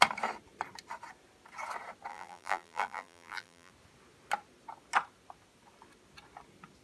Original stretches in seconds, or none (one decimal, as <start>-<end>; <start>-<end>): 0.0-2.1; 3.7-6.8